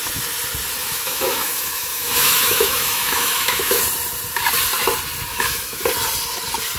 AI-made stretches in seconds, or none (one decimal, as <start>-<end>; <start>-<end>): 0.8-3.8; 5.3-5.8